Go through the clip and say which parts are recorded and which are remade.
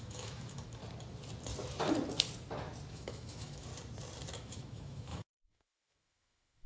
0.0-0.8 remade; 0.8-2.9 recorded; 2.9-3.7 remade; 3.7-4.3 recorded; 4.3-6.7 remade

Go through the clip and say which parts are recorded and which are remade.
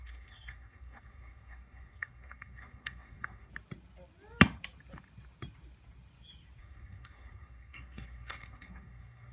0.0-3.5 remade; 3.5-6.6 recorded; 6.6-9.3 remade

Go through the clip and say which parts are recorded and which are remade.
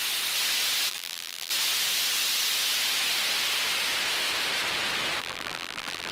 0.0-0.9 recorded; 0.9-1.5 remade; 1.5-5.2 recorded; 5.2-6.1 remade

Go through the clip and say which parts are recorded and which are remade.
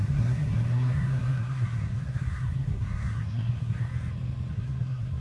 0.0-3.9 remade; 3.9-4.5 recorded; 4.5-5.2 remade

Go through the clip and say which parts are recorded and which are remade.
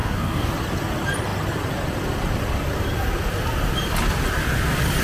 0.0-0.5 remade; 0.5-5.0 recorded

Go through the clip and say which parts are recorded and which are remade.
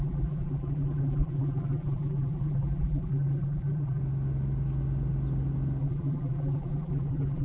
0.0-4.0 remade; 4.0-5.8 recorded; 5.8-7.4 remade